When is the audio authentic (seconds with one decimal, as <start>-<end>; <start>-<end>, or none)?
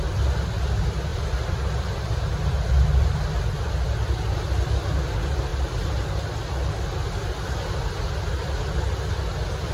0.0-1.1; 2.2-9.7